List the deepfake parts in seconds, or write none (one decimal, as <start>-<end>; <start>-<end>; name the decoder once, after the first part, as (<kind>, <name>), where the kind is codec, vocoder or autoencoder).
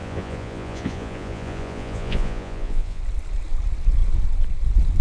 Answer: 0.0-3.0 (vocoder, Vocos)